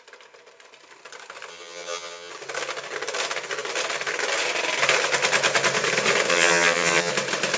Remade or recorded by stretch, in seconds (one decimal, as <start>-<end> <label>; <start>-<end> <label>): 0.0-1.5 recorded; 1.5-2.3 remade; 2.3-6.3 recorded; 6.3-7.1 remade; 7.1-7.6 recorded